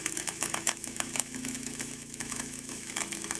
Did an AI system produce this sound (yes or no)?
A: yes